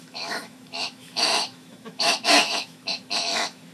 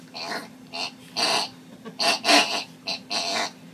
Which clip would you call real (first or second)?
second